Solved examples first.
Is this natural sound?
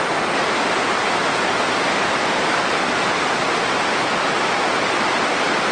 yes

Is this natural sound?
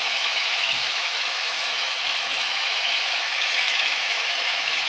no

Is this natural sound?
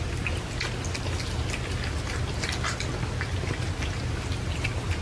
yes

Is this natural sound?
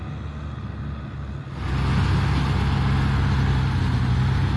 yes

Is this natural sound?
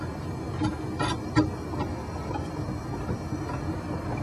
yes